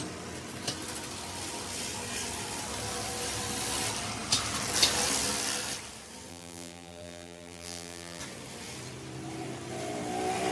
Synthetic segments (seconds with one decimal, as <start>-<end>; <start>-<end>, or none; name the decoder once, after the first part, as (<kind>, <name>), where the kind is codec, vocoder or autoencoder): 6.3-8.2 (vocoder, BigVGAN v2)